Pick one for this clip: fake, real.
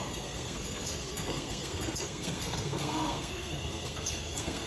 fake